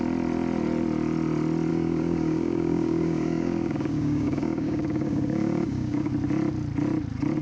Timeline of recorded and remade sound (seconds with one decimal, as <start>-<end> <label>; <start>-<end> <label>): 0.0-1.7 recorded; 1.7-6.1 remade; 6.1-7.4 recorded

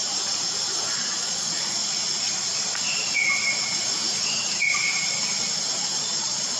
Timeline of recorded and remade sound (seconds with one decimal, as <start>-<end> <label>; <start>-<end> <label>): 0.0-0.9 recorded; 0.9-1.8 remade; 1.8-5.8 recorded; 5.8-6.6 remade

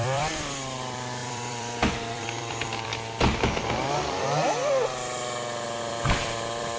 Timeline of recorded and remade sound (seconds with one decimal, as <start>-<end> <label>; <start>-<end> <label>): 0.0-2.9 remade; 2.9-5.8 recorded; 5.8-6.8 remade

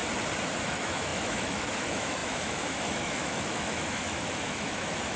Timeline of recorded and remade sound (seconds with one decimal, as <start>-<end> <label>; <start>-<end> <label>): 0.0-0.6 recorded; 0.6-5.2 remade

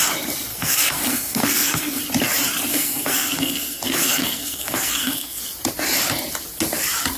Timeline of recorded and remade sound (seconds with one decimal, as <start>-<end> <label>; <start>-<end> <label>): 0.0-0.5 recorded; 0.5-2.0 remade; 2.0-2.7 recorded; 2.7-5.4 remade; 5.4-7.2 recorded